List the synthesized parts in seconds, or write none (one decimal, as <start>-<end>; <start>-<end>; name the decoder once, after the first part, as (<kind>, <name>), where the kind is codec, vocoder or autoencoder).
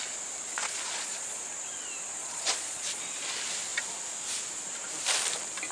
0.5-1.4 (vocoder, Vocos); 2.2-3.0